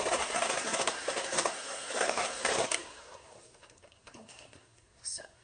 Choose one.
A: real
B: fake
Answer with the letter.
B